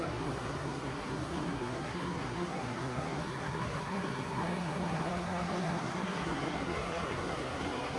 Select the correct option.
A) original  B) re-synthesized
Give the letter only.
B